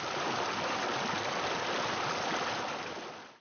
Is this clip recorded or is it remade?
recorded